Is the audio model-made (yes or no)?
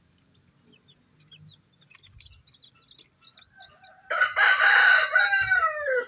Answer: no